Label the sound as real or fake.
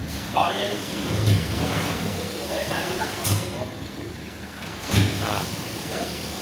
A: fake